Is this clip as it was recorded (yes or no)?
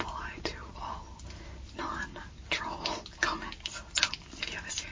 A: yes